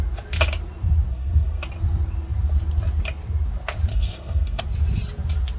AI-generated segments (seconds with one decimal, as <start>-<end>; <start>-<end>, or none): 1.1-1.6; 3.9-4.6